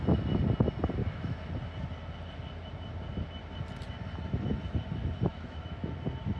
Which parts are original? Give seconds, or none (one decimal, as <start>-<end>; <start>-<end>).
0.0-1.0; 1.5-5.3; 5.9-6.4